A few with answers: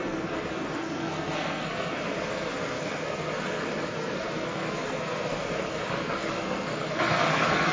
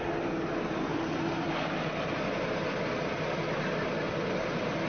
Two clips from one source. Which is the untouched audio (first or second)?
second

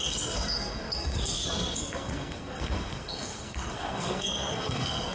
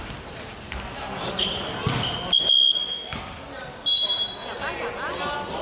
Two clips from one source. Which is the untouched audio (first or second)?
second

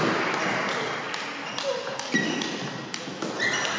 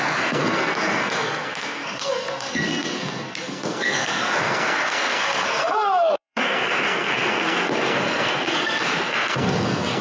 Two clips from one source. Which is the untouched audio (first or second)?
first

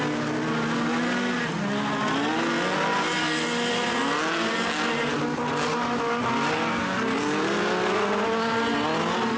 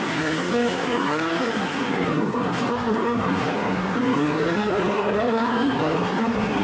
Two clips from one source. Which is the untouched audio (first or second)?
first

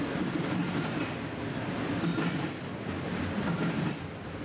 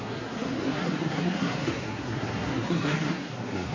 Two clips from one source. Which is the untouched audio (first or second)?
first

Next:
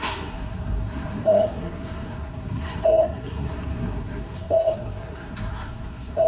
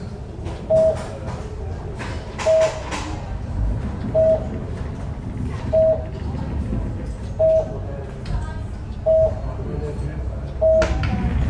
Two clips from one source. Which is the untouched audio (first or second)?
second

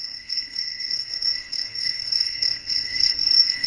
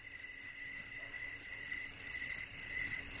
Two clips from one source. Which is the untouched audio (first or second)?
second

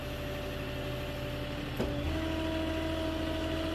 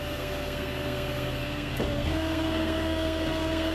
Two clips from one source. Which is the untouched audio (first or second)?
first